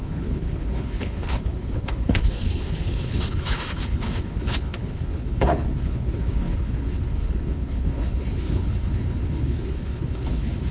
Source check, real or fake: fake